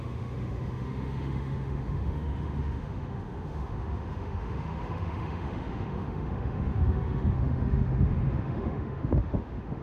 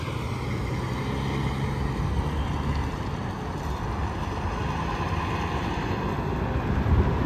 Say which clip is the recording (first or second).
second